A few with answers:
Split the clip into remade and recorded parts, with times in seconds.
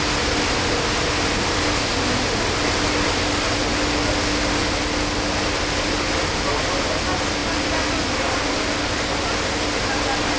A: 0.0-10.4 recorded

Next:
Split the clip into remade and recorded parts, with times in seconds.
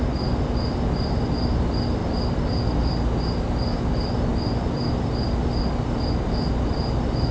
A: 0.0-7.3 recorded